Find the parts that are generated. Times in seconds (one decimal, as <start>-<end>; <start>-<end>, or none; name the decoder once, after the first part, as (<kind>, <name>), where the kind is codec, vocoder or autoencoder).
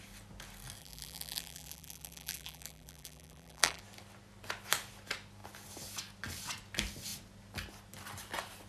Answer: 0.8-3.8 (vocoder, BigVGAN v2)